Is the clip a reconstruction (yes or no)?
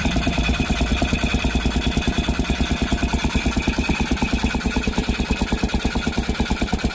yes